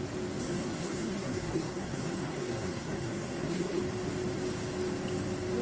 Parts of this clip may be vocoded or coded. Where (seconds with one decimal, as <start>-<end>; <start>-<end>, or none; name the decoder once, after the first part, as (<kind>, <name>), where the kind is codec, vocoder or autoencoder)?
0.4-3.8 (codec, SNAC)